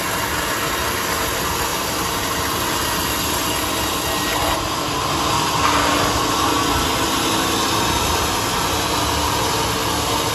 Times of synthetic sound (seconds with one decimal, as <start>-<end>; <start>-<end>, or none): 1.7-2.3